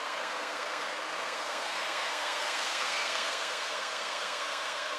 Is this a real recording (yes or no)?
no